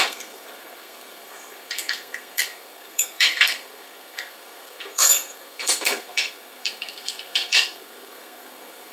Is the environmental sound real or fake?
fake